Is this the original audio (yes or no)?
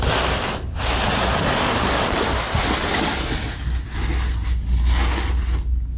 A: yes